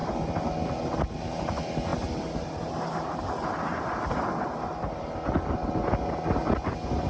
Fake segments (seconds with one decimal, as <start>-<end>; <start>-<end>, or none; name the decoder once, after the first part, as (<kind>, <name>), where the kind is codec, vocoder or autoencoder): none

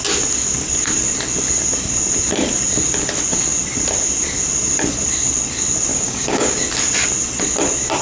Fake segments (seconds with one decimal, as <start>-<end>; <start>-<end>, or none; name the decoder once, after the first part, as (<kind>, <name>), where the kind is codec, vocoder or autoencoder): 5.9-6.6 (codec, DAC)

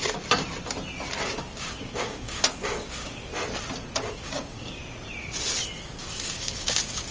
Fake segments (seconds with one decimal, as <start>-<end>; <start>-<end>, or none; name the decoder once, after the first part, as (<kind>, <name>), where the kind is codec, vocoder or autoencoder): 1.4-3.3 (codec, DAC); 4.1-4.8; 5.8-7.1

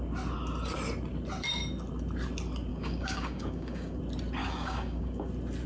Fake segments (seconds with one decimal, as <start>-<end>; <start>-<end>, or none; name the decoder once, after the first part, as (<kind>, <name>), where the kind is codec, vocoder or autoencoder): 2.7-4.0 (codec, DAC); 4.4-5.3